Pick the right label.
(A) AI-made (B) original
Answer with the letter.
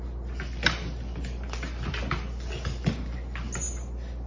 B